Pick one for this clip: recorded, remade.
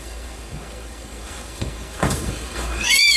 remade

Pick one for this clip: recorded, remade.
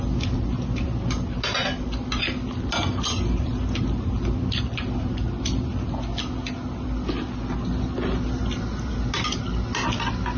recorded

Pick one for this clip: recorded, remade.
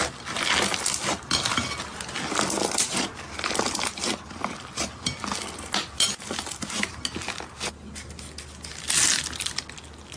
recorded